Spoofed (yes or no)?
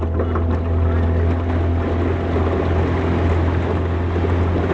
no